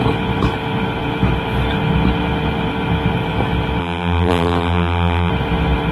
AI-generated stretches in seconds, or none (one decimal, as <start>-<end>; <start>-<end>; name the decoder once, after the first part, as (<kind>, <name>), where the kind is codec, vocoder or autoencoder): 3.8-5.3 (vocoder, BigVGAN v2)